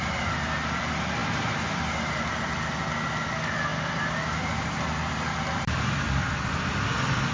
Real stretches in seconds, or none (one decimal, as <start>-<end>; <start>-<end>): 0.0-3.7